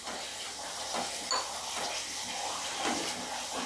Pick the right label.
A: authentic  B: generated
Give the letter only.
A